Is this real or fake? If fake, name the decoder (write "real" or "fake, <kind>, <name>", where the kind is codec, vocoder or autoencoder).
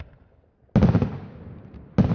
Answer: real